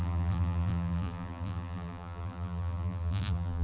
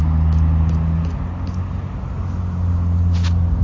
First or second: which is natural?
second